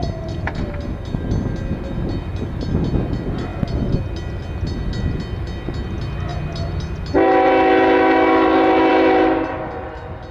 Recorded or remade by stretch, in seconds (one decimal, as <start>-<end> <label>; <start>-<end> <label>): 0.0-10.3 recorded